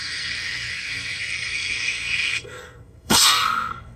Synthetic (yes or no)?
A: yes